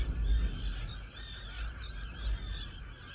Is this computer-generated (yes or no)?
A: no